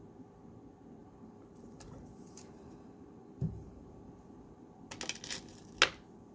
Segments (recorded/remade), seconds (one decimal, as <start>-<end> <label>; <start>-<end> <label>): 0.0-1.0 recorded; 1.0-3.9 remade; 3.9-6.3 recorded